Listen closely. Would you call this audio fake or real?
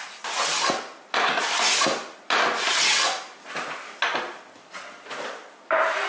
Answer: real